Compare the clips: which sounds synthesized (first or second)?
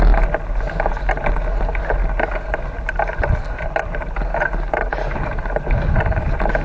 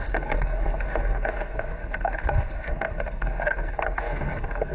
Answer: second